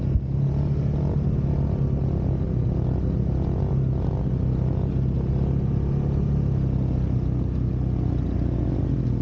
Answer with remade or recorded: recorded